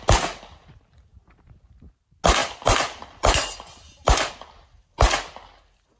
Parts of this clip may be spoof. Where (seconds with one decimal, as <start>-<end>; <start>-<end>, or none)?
2.4-4.3